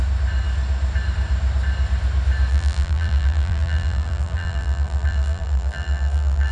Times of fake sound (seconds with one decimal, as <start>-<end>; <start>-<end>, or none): 2.5-6.5